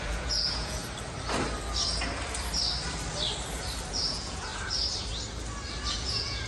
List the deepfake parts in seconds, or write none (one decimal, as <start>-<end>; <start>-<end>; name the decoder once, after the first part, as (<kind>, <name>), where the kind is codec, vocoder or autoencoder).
0.0-0.8 (vocoder, Vocos); 3.9-4.5; 5.9-6.5